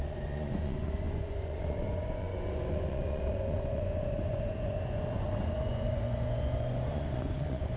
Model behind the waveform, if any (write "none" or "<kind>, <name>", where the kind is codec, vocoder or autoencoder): vocoder, Vocos